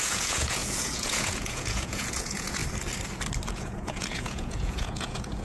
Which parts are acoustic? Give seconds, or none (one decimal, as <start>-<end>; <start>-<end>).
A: 2.6-3.5